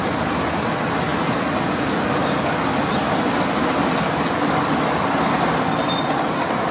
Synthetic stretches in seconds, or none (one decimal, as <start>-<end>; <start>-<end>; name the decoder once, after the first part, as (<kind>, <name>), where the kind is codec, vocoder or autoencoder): none